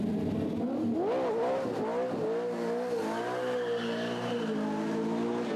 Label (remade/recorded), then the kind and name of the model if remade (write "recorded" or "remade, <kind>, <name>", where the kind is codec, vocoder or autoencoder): recorded